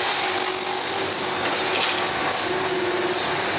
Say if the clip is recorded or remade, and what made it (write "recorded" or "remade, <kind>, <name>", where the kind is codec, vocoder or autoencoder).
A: recorded